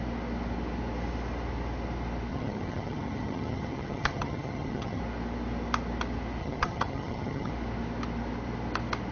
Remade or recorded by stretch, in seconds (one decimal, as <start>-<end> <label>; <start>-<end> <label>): 0.0-2.3 recorded; 2.3-5.0 remade; 5.0-6.4 recorded; 6.4-7.5 remade; 7.5-9.1 recorded